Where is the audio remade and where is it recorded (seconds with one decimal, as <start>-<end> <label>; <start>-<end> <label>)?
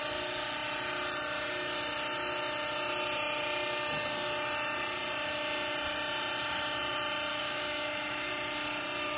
0.0-7.3 recorded; 7.3-8.3 remade; 8.3-9.2 recorded